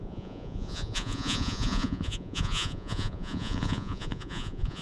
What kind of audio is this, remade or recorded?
remade